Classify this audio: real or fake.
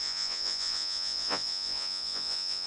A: fake